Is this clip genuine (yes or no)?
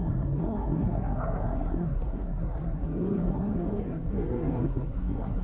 no